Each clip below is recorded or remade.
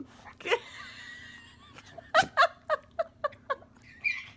recorded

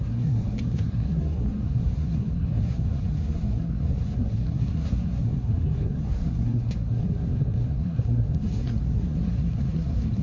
remade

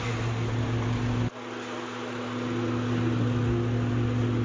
recorded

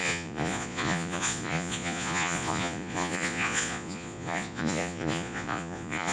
remade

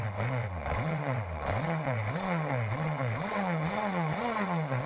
remade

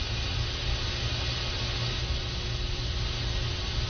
recorded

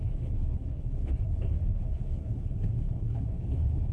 remade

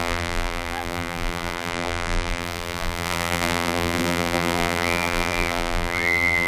remade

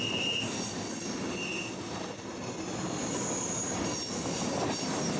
recorded